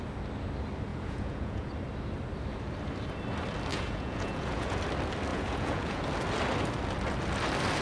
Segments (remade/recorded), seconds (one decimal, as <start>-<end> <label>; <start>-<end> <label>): 0.0-0.9 recorded; 0.9-1.7 remade; 1.7-3.7 recorded; 3.7-4.8 remade; 4.8-5.3 recorded; 5.3-6.0 remade; 6.0-7.8 recorded